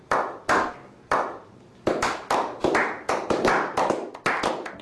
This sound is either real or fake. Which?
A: real